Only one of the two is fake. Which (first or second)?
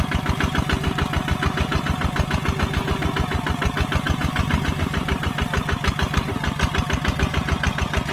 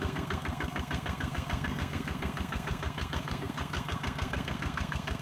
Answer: second